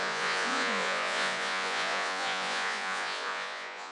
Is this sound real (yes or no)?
no